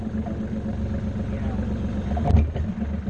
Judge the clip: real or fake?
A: real